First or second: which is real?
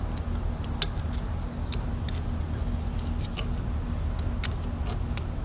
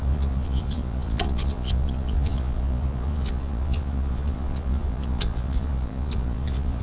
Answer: first